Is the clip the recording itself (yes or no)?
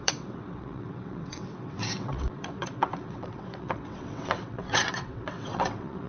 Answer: no